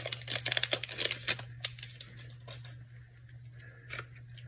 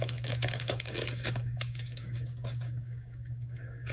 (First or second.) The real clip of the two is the first